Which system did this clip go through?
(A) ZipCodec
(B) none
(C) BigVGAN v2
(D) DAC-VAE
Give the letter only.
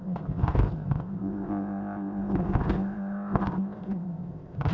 A